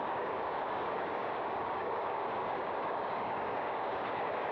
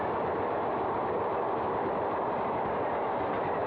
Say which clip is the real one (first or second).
second